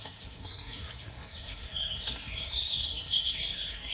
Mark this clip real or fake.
fake